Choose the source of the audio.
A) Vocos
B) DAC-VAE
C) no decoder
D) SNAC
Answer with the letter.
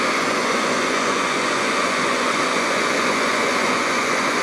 A